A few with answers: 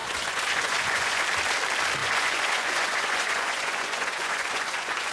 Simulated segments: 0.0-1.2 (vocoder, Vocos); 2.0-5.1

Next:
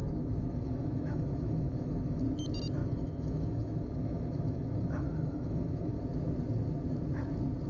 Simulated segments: 0.0-2.2 (autoencoder, DAC-VAE); 2.8-6.0

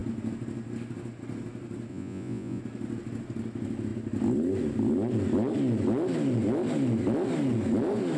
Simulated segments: 1.9-2.6 (vocoder, Vocos)

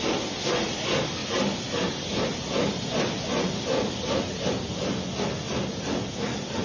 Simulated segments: none

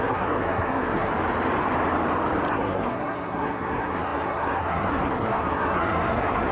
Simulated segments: 0.0-1.1 (codec, SNAC); 2.5-6.5

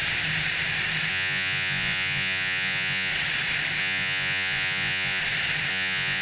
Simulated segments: 1.1-3.1 (vocoder, Vocos); 3.8-5.2; 5.7-6.2